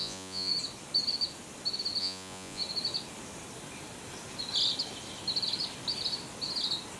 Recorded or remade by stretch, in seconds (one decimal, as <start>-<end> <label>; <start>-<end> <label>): 0.0-0.5 remade; 0.5-2.0 recorded; 2.0-2.6 remade; 2.6-7.0 recorded

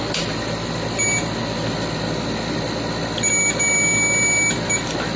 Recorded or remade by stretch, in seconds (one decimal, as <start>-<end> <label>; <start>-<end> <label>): 0.0-5.2 recorded

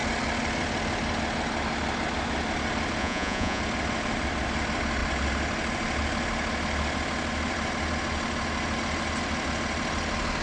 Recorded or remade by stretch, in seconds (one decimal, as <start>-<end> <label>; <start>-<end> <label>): 0.0-3.0 recorded; 3.0-3.6 remade; 3.6-10.4 recorded

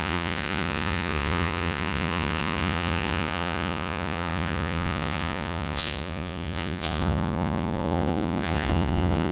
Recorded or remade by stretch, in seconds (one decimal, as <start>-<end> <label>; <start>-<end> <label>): 0.0-9.3 remade